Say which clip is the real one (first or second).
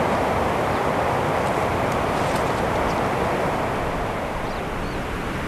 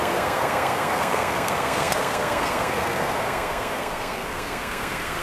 first